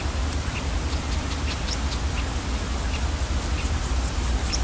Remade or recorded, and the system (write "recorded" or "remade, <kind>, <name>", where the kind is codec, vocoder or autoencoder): recorded